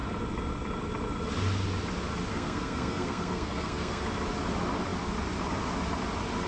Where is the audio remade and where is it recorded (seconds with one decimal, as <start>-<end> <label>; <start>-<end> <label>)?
0.0-2.3 recorded; 2.3-4.0 remade; 4.0-6.5 recorded